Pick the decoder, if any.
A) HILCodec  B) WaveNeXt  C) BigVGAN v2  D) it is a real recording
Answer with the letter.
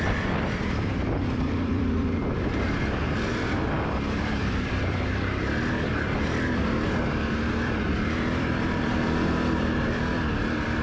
C